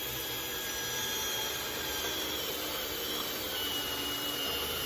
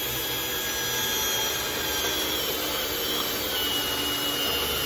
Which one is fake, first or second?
first